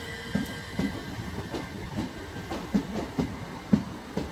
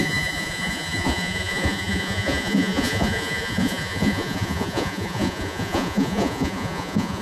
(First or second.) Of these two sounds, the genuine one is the first